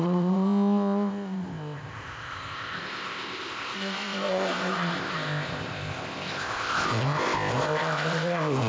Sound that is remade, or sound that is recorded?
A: remade